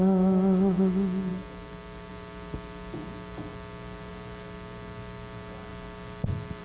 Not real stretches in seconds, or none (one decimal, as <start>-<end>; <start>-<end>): none